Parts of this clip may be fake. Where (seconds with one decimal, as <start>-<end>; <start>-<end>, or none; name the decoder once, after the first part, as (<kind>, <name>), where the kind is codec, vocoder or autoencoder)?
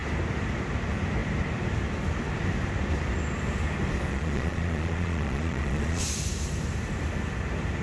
4.1-6.0 (vocoder, Vocos)